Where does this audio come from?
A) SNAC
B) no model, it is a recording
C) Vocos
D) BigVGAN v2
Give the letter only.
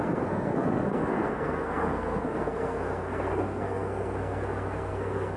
A